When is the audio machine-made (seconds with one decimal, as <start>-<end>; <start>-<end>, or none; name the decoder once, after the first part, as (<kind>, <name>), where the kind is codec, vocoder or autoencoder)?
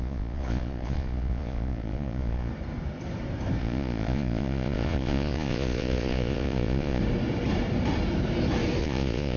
0.0-2.5 (vocoder, Vocos); 3.6-7.0; 8.8-9.4